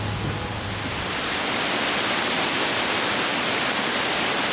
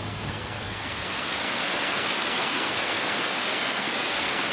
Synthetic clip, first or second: second